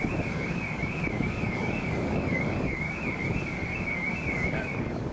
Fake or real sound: fake